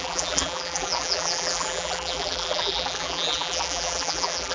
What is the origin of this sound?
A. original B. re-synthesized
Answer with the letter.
B